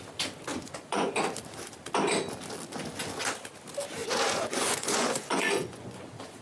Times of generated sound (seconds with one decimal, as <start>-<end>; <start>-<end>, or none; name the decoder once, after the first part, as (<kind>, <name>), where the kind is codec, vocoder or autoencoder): 0.5-1.1 (vocoder, Vocos); 4.0-6.4